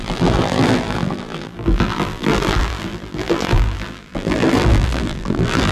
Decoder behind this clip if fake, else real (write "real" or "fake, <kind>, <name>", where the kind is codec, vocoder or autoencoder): fake, vocoder, BigVGAN v2